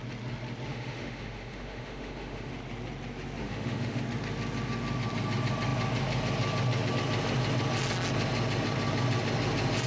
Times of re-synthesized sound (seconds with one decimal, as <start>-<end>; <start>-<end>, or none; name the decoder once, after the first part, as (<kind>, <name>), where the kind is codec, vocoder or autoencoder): 0.7-2.5 (autoencoder, DAC-VAE); 3.4-4.0